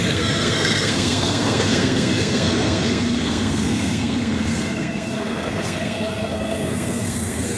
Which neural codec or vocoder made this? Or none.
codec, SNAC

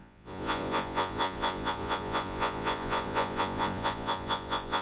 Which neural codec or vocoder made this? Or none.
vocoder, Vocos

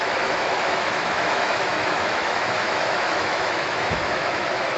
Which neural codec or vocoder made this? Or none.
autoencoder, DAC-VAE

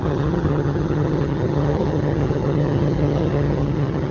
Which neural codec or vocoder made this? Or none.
vocoder, HiFi-GAN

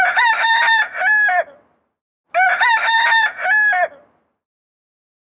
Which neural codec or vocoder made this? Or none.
none